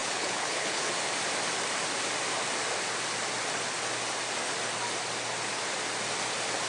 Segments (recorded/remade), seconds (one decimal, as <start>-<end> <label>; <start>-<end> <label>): 0.0-0.8 remade; 0.8-6.7 recorded